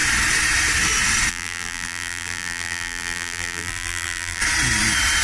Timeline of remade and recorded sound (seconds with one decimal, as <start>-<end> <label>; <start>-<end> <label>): 0.0-1.3 recorded; 1.3-4.4 remade; 4.4-5.2 recorded